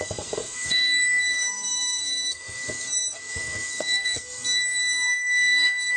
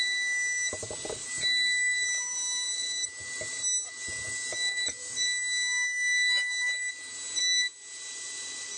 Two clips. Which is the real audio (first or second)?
second